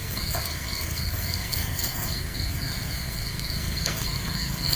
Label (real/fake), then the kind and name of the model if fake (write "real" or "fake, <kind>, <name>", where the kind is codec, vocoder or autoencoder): fake, codec, SNAC